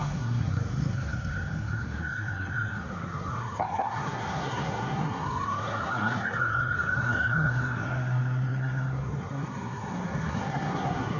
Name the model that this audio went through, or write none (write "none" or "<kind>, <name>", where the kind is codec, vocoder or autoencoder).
codec, SNAC